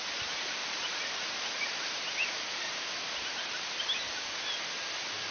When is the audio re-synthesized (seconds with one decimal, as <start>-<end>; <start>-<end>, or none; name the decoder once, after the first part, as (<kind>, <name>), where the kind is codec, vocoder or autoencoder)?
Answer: 0.6-3.8 (vocoder, BigVGAN v2)